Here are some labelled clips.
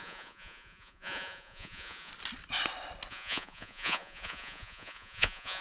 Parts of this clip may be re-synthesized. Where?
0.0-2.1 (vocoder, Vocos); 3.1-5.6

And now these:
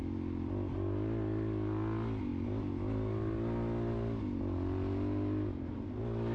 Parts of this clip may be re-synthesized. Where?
none

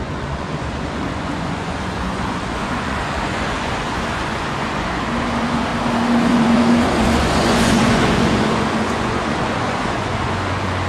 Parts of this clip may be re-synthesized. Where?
0.0-5.7 (vocoder, Vocos); 6.2-10.9

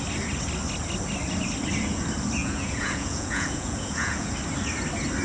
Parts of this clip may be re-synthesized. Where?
2.4-4.3 (vocoder, Vocos)

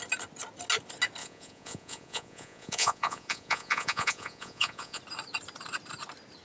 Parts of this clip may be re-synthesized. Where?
1.2-5.0 (vocoder, Vocos)